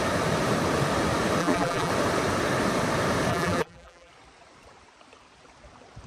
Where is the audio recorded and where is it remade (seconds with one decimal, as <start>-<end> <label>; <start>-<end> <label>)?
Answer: 0.0-1.4 recorded; 1.4-1.9 remade; 1.9-3.3 recorded; 3.3-4.1 remade; 4.1-6.1 recorded